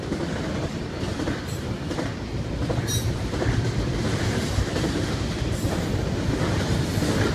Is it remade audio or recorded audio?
remade